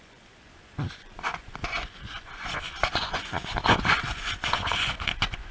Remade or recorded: remade